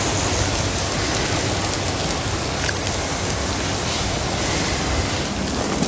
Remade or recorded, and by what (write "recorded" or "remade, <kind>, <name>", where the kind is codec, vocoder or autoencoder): recorded